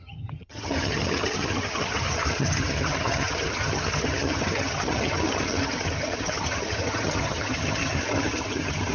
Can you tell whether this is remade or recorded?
remade